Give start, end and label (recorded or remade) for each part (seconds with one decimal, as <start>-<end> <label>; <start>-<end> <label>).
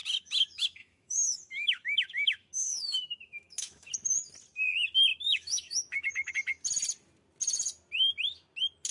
0.0-3.9 remade; 3.9-5.1 recorded; 5.1-6.3 remade; 6.3-8.9 recorded